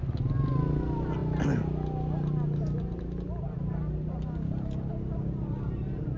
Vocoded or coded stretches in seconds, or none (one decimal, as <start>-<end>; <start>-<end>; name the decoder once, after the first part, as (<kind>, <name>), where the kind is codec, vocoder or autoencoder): none